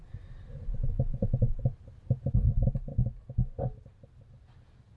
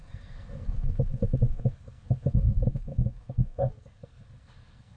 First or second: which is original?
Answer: first